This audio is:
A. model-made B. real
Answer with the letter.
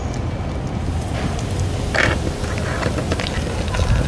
B